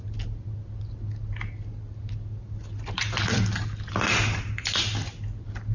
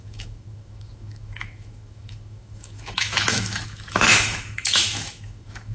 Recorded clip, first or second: first